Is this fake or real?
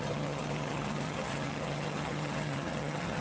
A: fake